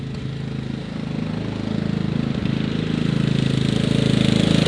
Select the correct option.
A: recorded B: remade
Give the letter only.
A